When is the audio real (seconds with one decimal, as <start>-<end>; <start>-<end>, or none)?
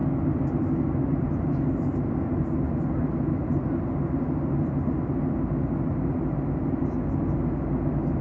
0.0-8.2